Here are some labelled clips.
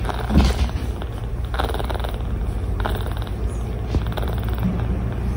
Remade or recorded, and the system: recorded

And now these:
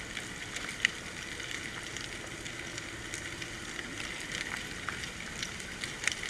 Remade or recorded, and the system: recorded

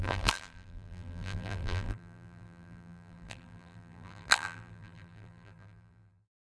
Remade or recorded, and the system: remade, vocoder, BigVGAN v2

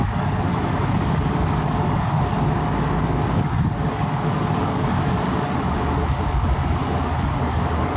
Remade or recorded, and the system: remade, codec, DAC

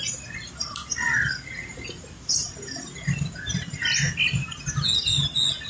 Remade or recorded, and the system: recorded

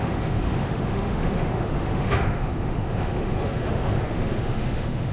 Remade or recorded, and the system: remade, autoencoder, DAC-VAE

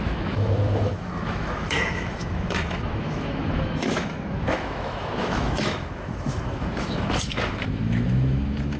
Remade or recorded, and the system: remade, autoencoder, DAC-VAE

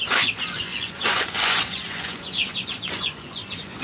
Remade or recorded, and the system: remade, vocoder, Vocos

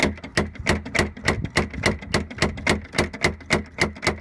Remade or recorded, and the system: recorded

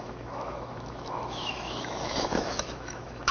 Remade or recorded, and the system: remade, autoencoder, DAC-VAE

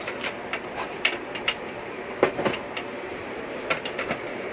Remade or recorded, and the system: remade, vocoder, BigVGAN v2